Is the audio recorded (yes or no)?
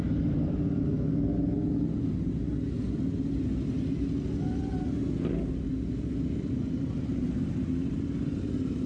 yes